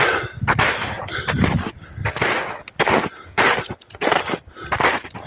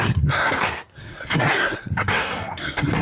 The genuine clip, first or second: first